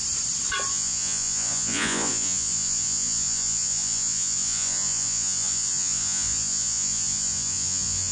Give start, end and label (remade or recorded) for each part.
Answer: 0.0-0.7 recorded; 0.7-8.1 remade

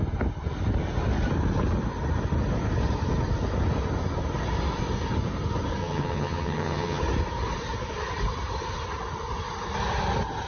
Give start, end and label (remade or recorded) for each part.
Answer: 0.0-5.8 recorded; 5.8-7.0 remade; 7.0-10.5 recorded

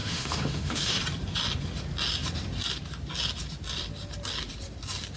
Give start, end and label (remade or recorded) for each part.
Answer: 0.0-1.0 remade; 1.0-5.2 recorded

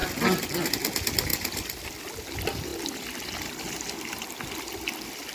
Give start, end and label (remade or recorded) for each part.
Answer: 0.0-5.3 recorded